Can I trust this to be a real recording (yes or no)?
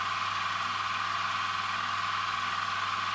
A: yes